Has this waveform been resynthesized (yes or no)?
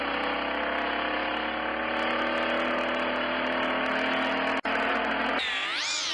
no